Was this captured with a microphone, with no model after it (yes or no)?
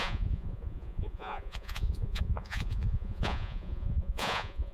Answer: no